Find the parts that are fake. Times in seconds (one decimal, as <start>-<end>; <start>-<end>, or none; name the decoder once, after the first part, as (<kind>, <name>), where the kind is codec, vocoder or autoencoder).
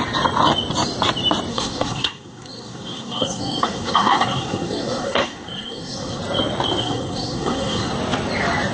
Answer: 1.5-6.2 (codec, SNAC); 6.8-7.9